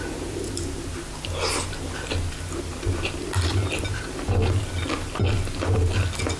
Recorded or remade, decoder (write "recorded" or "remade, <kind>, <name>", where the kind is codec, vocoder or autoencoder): recorded